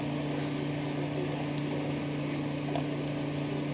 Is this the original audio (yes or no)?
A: yes